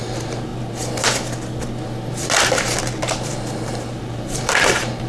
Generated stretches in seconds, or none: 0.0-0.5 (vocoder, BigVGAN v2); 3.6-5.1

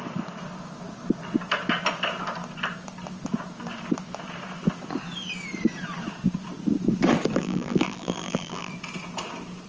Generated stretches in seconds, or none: 7.4-8.7 (vocoder, BigVGAN v2)

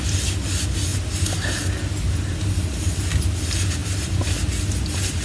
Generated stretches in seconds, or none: 0.9-1.5 (vocoder, BigVGAN v2)

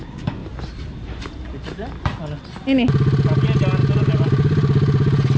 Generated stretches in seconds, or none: 0.4-1.2 (vocoder, BigVGAN v2); 3.8-5.4